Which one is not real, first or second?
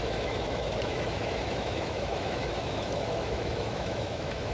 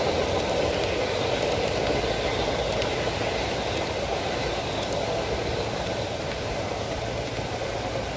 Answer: first